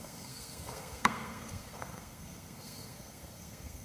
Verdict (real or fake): fake